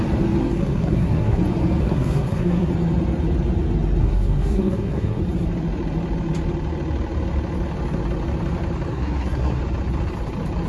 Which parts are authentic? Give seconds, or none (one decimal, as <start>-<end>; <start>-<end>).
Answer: 0.0-0.4; 1.4-1.8; 2.7-4.0; 5.2-8.9; 9.6-10.7